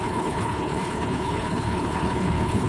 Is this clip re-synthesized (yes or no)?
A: yes